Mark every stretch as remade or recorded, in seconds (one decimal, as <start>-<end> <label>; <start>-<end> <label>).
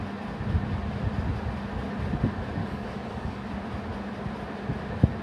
0.0-2.6 recorded; 2.6-3.5 remade; 3.5-5.2 recorded